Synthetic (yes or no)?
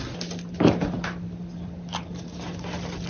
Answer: no